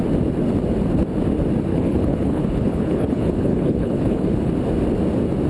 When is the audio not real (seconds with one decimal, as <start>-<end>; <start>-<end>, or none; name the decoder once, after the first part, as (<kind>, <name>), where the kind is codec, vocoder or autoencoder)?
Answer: 1.7-4.5 (codec, HILCodec)